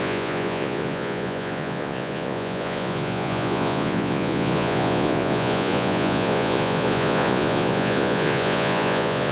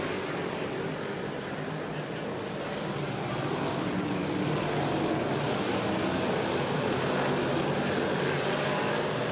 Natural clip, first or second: second